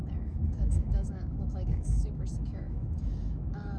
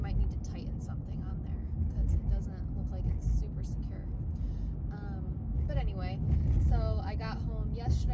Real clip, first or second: second